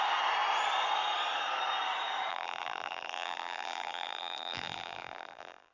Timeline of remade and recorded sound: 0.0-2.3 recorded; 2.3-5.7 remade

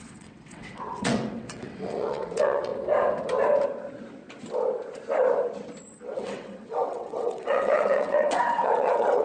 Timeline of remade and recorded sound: 0.0-2.7 remade; 2.7-6.0 recorded; 6.0-9.2 remade

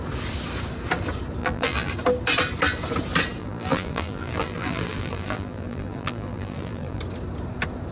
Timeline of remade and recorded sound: 0.0-1.4 recorded; 1.4-1.9 remade; 1.9-3.4 recorded; 3.4-7.0 remade; 7.0-7.9 recorded

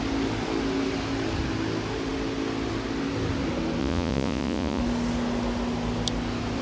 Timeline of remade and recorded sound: 0.0-3.8 recorded; 3.8-4.8 remade; 4.8-6.6 recorded

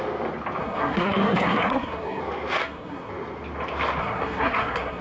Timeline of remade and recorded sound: 0.0-0.6 recorded; 0.6-2.2 remade; 2.2-2.6 recorded; 2.6-3.1 remade; 3.1-4.0 recorded; 4.0-5.0 remade

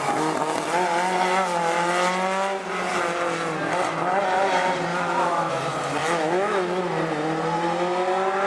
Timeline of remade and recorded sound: 0.0-4.9 recorded; 4.9-5.5 remade; 5.5-6.0 recorded; 6.0-6.8 remade; 6.8-8.5 recorded